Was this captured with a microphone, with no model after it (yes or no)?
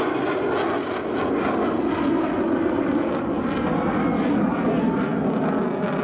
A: yes